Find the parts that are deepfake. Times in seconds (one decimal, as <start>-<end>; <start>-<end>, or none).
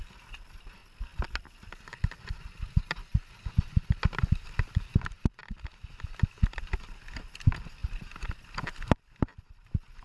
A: 0.0-0.8; 4.3-5.4; 6.1-7.8